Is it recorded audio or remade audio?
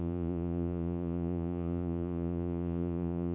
remade